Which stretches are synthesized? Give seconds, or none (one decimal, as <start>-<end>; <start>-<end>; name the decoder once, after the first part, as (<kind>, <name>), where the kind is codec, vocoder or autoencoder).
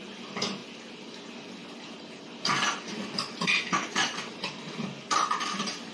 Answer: none